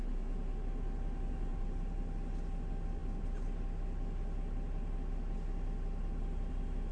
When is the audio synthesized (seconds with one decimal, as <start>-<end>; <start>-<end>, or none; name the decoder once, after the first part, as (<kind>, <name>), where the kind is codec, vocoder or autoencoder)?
1.5-2.0 (vocoder, BigVGAN v2)